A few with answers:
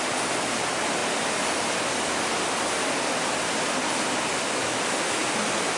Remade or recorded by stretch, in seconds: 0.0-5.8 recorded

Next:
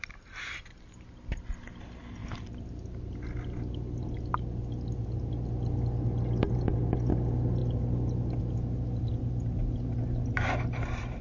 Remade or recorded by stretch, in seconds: 0.0-11.2 recorded

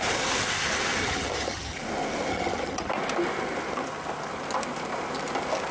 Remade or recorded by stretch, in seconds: 0.0-1.0 recorded; 1.0-1.8 remade; 1.8-2.3 recorded; 2.3-2.9 remade; 2.9-5.7 recorded

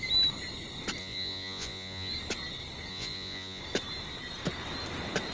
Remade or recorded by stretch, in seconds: 0.0-1.0 recorded; 1.0-2.1 remade; 2.1-2.9 recorded; 2.9-3.6 remade; 3.6-5.3 recorded

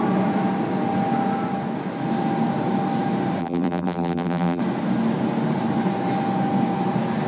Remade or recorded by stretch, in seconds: 0.0-3.4 recorded; 3.4-4.6 remade; 4.6-7.3 recorded